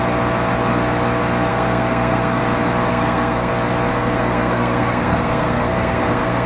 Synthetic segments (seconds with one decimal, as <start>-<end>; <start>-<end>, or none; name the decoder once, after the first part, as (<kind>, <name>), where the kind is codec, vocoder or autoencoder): 1.5-2.4 (codec, SNAC); 2.9-3.5; 3.9-6.5